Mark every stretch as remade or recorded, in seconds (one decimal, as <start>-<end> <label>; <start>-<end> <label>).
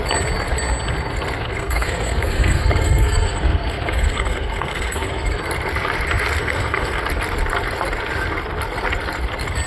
0.0-1.4 recorded; 1.4-5.4 remade; 5.4-6.4 recorded; 6.4-7.0 remade; 7.0-9.7 recorded